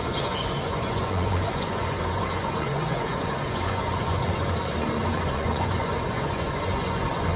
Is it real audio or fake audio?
fake